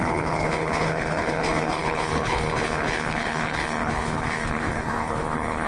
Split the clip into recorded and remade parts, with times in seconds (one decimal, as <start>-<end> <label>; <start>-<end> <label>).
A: 0.0-5.7 remade